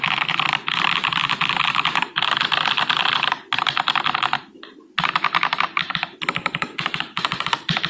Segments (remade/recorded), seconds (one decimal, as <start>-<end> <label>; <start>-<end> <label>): 0.0-6.4 recorded; 6.4-7.0 remade; 7.0-7.9 recorded